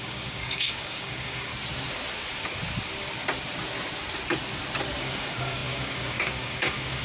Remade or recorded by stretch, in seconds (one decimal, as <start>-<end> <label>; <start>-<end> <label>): 0.0-1.5 remade; 1.5-5.0 recorded; 5.0-7.0 remade